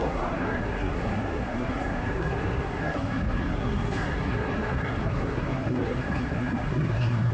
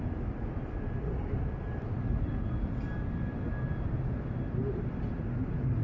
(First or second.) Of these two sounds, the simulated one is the first